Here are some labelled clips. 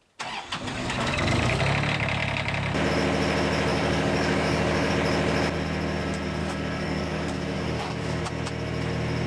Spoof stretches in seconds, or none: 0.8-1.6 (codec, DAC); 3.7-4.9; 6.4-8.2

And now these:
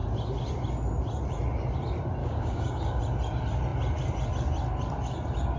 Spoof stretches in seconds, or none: 2.2-3.0 (codec, DAC)

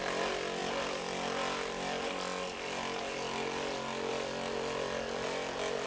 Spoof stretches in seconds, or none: none

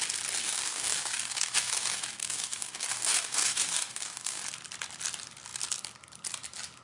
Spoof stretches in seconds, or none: 0.4-4.4 (codec, DAC)

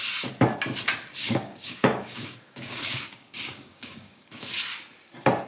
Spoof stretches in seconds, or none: 1.2-4.5 (codec, DAC)

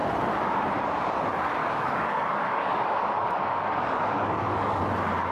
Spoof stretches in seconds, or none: 1.6-4.8 (codec, DAC)